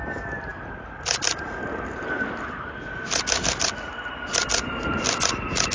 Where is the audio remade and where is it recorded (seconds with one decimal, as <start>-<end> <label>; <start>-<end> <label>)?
0.0-5.7 recorded